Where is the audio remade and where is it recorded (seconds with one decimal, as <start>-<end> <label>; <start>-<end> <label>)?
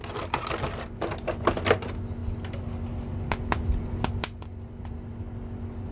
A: 0.0-5.9 recorded